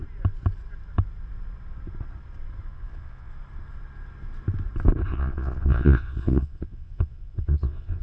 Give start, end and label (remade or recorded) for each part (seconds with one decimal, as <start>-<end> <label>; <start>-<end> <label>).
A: 0.0-2.7 recorded; 2.7-3.3 remade; 3.3-5.1 recorded; 5.1-8.0 remade